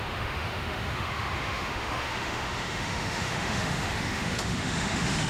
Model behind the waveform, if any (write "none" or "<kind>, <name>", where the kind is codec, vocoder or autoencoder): autoencoder, DAC-VAE